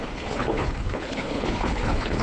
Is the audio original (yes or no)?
no